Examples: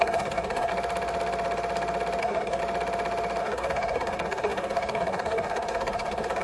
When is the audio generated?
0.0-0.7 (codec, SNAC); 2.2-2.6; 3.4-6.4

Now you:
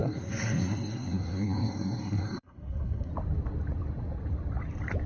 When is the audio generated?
0.0-3.1 (codec, SNAC)